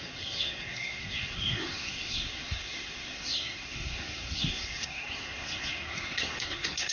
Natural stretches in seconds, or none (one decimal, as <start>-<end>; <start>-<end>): none